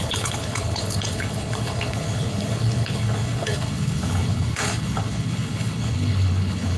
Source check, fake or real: fake